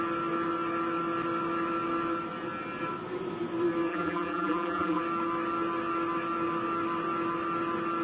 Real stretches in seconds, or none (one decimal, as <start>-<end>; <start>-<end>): 0.0-3.9; 5.0-8.0